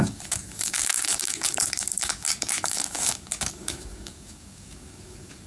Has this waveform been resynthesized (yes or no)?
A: yes